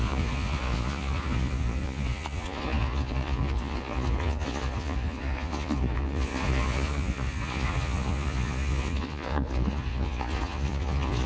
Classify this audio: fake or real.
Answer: fake